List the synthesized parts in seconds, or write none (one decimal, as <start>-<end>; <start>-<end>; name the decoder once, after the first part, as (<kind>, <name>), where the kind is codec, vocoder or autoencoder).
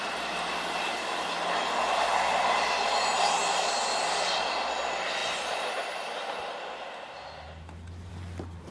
3.4-4.8 (vocoder, BigVGAN v2)